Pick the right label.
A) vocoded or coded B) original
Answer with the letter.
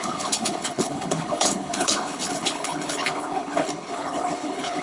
A